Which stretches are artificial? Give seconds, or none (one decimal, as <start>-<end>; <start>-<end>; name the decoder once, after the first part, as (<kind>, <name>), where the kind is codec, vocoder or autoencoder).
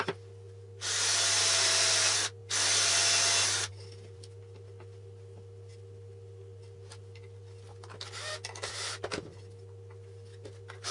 none